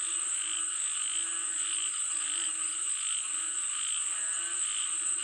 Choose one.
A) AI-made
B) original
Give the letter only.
B